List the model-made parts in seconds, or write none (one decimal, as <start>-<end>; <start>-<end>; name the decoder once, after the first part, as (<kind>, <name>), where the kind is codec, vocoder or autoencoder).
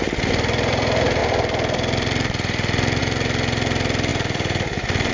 1.2-3.0 (vocoder, BigVGAN v2); 4.1-5.1